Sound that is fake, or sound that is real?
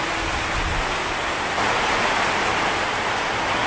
real